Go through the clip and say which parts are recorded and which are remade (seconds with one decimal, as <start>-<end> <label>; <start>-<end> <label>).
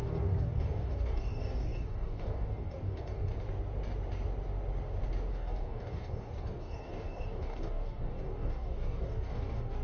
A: 0.0-3.3 remade; 3.3-5.3 recorded; 5.3-9.8 remade